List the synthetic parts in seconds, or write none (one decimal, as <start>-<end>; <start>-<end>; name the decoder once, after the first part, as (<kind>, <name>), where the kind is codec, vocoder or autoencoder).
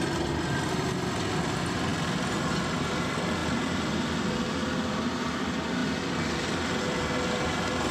none